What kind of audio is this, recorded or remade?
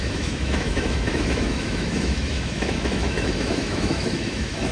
remade